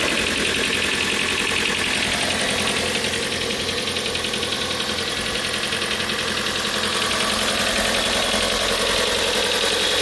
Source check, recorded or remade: recorded